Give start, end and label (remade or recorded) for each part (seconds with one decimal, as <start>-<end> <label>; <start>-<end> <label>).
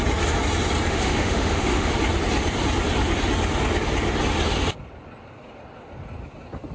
0.0-0.9 recorded; 0.9-1.9 remade; 1.9-6.7 recorded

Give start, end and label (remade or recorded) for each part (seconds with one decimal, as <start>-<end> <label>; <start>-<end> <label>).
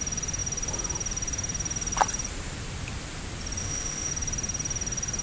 0.0-3.6 recorded; 3.6-4.1 remade; 4.1-5.2 recorded